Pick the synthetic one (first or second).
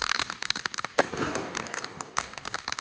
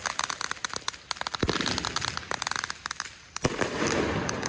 first